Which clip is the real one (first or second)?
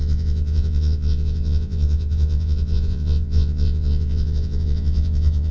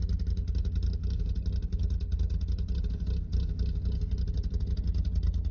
second